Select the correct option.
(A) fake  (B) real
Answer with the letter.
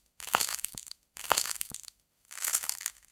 A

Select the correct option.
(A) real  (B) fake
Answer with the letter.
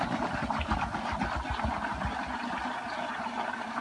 A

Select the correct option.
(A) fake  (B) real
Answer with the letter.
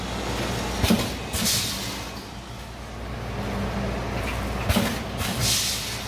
B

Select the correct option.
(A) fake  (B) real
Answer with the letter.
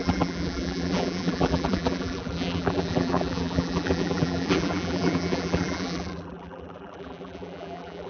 A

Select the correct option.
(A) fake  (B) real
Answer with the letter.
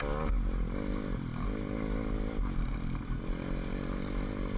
B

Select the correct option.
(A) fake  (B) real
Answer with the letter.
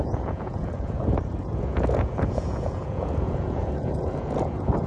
A